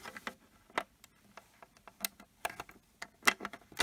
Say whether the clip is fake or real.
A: real